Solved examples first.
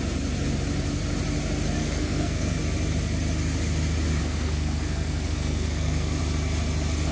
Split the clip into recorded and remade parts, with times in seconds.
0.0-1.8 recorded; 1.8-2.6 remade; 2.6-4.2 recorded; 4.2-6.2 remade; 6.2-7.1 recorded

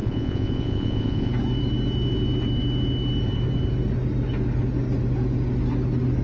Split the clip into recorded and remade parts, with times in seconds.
0.0-1.3 remade; 1.3-6.2 recorded

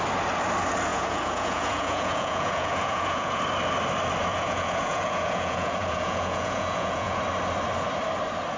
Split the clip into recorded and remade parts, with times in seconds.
0.0-0.9 recorded; 0.9-3.4 remade; 3.4-4.3 recorded; 4.3-7.2 remade; 7.2-8.6 recorded

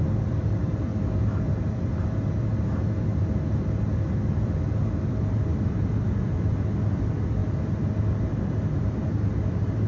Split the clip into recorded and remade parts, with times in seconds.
0.0-0.9 remade; 0.9-1.6 recorded; 1.6-2.5 remade; 2.5-4.3 recorded; 4.3-9.9 remade

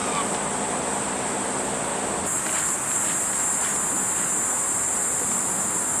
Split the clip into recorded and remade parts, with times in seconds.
0.0-6.0 recorded

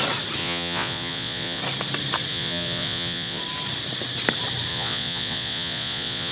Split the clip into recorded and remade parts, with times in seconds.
0.0-0.4 recorded; 0.4-1.6 remade; 1.6-2.3 recorded; 2.3-3.4 remade; 3.4-4.7 recorded; 4.7-6.3 remade

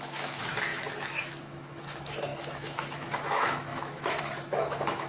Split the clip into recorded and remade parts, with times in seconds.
0.0-5.1 remade